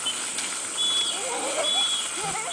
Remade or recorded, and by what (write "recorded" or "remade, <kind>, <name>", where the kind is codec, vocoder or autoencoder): recorded